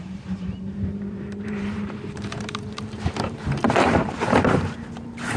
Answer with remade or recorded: remade